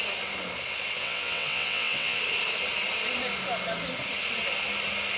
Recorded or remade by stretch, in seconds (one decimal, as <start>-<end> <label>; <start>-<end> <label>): 0.0-1.0 recorded; 1.0-2.2 remade; 2.2-5.2 recorded